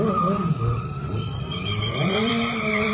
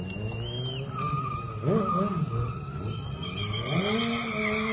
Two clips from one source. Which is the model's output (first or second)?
first